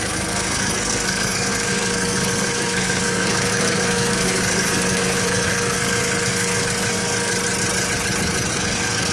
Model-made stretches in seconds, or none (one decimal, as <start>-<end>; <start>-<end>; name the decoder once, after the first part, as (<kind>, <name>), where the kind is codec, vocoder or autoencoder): 0.0-7.3 (codec, SNAC); 8.5-9.1